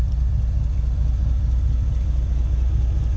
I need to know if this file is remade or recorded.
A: recorded